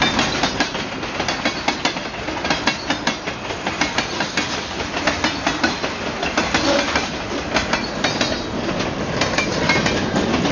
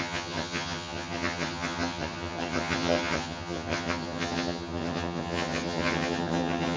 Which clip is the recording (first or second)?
first